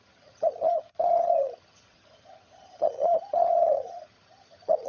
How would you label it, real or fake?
fake